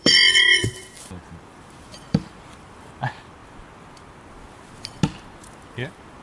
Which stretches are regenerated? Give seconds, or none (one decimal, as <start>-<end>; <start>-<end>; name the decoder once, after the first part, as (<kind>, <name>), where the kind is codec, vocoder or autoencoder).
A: 0.0-3.4 (vocoder, BigVGAN v2); 5.7-6.2